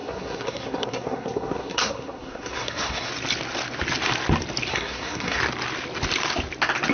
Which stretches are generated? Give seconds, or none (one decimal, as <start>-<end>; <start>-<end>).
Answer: 0.0-3.1; 4.7-5.4